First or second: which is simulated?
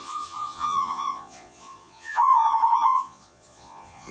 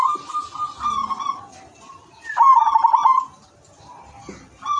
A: first